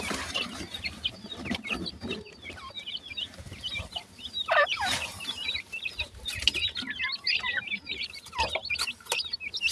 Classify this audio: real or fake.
fake